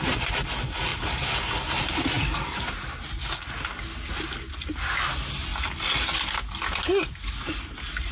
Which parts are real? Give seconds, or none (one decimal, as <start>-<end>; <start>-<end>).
0.0-8.1